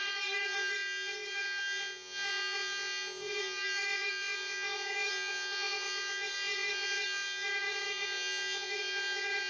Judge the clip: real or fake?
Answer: fake